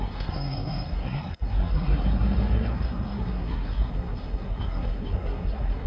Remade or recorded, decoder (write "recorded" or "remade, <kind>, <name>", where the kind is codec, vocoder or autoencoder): remade, codec, SNAC